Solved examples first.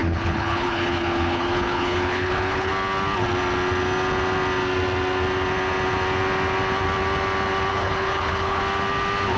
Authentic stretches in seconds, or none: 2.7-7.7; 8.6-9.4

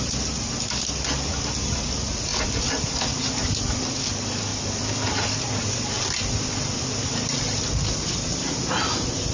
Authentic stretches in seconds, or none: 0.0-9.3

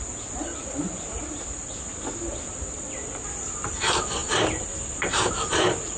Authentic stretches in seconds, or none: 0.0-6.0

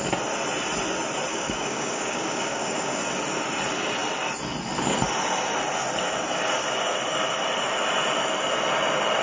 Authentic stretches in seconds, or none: 0.0-1.3; 3.0-9.2

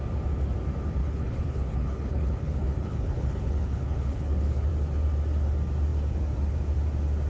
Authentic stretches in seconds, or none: 0.0-1.0; 4.7-7.3